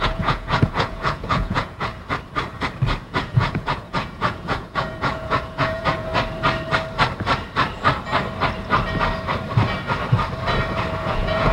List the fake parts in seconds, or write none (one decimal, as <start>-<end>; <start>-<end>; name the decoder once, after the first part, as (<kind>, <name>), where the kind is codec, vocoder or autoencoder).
0.0-1.9 (vocoder, Vocos); 3.0-6.1; 11.0-11.5